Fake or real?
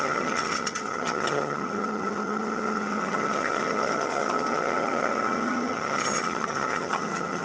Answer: fake